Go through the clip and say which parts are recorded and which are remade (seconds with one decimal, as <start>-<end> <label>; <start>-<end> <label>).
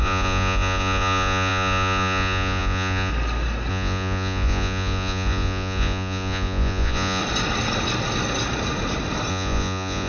0.0-3.1 remade; 3.1-3.7 recorded; 3.7-7.2 remade; 7.2-9.3 recorded; 9.3-10.1 remade